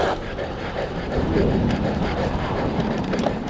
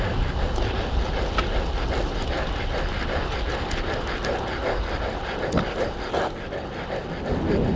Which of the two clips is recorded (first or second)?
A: second